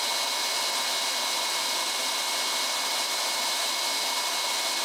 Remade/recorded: recorded